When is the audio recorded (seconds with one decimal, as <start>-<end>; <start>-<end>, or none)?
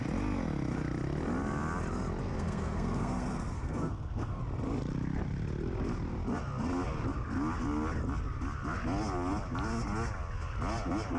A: 0.0-2.2; 4.4-11.2